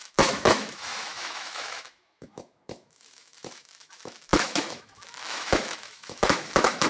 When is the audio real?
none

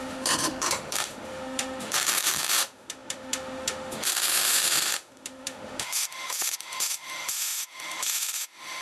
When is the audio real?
none

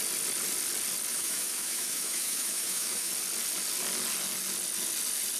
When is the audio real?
0.0-1.1; 3.1-5.4